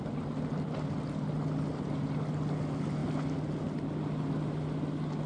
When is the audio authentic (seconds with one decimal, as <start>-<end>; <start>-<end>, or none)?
0.0-5.3